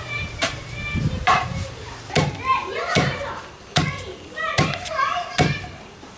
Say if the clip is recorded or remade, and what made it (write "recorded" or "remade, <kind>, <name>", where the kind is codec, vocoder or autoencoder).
remade, vocoder, BigVGAN v2